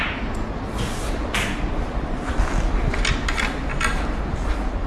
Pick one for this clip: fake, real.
real